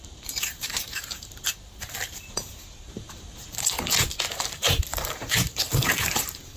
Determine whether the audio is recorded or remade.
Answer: remade